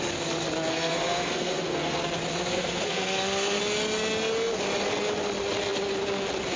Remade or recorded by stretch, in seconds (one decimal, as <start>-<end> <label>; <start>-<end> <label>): 0.0-0.7 recorded; 0.7-2.0 remade; 2.0-2.4 recorded; 2.4-3.6 remade; 3.6-6.6 recorded